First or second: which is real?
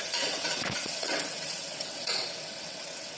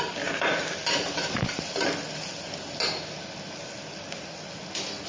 second